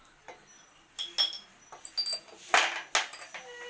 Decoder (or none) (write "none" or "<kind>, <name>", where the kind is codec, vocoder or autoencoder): none